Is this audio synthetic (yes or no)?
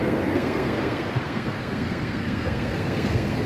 yes